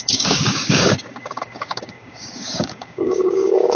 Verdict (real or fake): fake